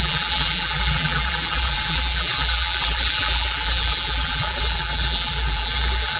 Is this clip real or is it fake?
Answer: fake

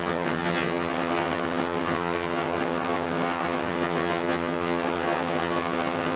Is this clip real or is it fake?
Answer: fake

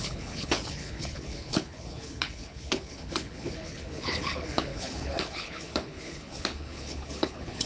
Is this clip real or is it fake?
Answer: fake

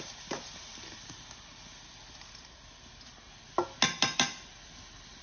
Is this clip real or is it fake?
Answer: real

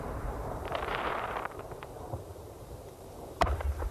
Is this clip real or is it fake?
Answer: fake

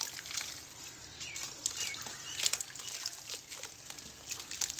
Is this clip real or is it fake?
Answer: real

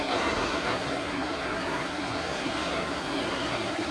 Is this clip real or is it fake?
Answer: fake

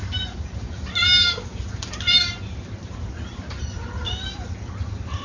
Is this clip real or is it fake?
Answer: real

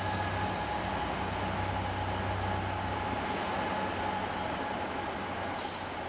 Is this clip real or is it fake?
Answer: real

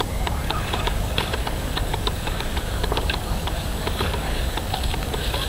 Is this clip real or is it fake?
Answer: fake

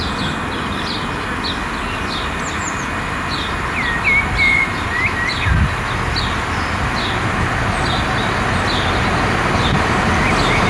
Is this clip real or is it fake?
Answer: real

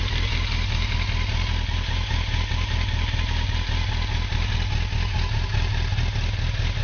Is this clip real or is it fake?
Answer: real